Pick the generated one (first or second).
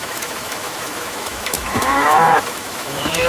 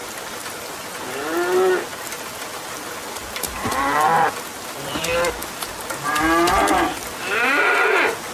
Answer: first